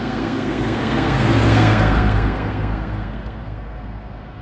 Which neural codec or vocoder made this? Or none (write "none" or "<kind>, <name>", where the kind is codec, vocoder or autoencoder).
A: codec, SNAC